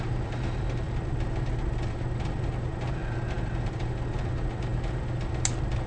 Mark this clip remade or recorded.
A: recorded